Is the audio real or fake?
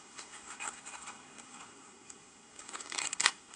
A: fake